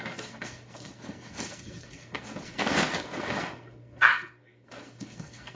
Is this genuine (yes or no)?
no